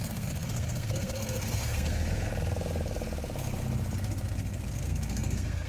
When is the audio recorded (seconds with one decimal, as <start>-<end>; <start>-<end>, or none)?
2.3-4.0